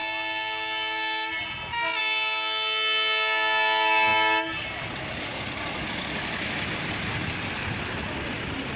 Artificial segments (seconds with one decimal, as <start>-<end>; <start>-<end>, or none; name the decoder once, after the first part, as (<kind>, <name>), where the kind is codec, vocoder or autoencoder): 7.2-8.8 (vocoder, BigVGAN v2)